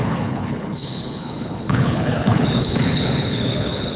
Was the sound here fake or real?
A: fake